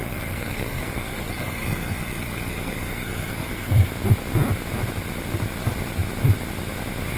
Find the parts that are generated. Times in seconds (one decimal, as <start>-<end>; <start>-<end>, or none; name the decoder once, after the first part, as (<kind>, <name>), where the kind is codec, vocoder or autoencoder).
0.0-3.9 (codec, SNAC)